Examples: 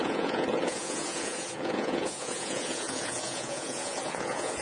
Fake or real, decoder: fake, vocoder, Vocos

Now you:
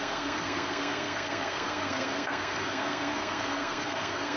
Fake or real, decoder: fake, codec, SNAC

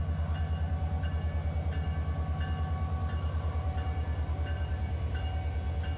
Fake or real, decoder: real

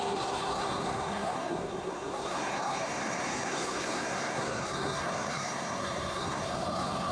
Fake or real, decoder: fake, codec, SNAC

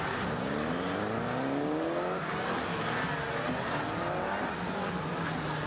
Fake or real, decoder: real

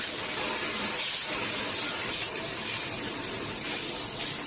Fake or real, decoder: real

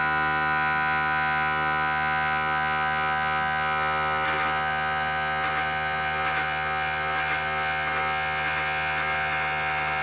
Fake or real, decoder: real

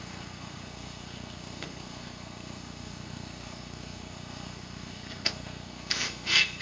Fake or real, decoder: fake, codec, SNAC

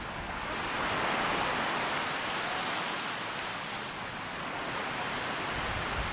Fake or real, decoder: real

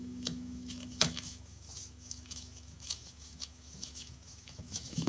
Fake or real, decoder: fake, autoencoder, DAC-VAE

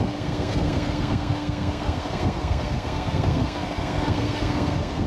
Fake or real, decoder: fake, codec, SNAC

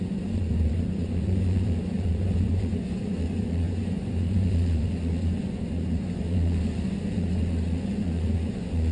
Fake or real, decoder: fake, vocoder, Vocos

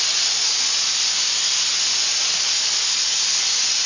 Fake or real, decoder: real